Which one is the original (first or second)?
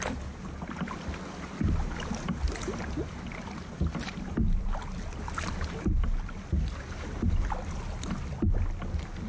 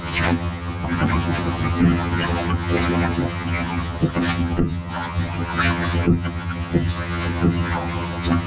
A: first